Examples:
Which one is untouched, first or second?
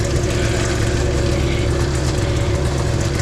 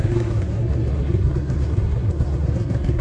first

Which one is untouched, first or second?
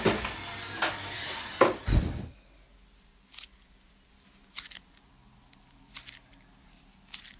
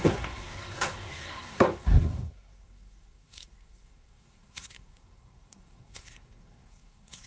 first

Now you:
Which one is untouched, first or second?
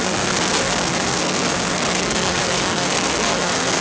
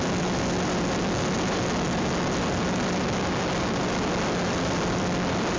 second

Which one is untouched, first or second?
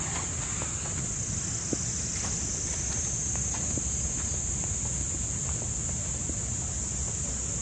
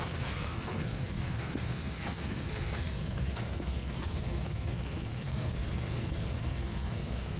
first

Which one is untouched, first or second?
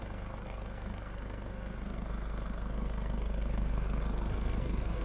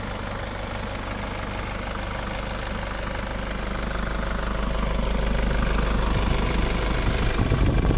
second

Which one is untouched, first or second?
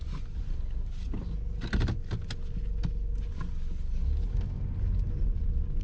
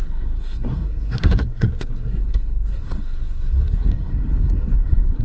first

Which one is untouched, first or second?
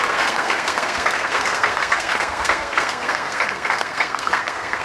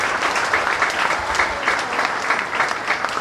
second